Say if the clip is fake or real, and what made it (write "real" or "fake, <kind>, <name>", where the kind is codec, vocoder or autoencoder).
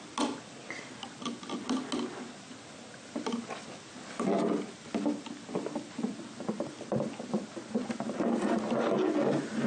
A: real